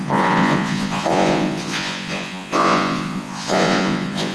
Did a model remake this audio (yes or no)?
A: yes